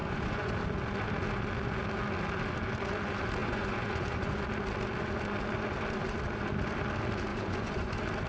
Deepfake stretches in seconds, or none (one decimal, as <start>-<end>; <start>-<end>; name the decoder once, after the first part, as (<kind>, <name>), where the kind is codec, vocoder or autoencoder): 0.0-0.5 (vocoder, Vocos); 3.4-4.4; 7.3-7.9